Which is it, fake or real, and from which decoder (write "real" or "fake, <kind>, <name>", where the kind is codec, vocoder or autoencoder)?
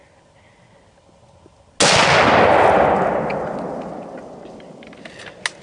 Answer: real